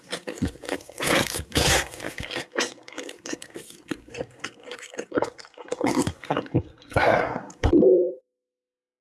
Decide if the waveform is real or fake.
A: fake